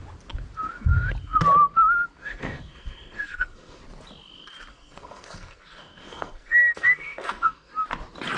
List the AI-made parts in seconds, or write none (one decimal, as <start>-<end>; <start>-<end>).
2.2-3.8; 4.7-7.7